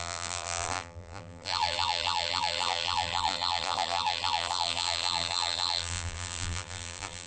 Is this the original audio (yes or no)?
no